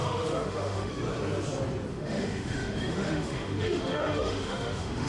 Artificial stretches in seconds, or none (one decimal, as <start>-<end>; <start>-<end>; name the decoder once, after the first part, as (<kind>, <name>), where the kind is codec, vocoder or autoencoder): 0.0-0.9 (autoencoder, DAC-VAE); 1.9-5.1